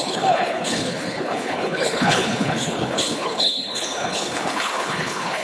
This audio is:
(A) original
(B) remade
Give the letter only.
B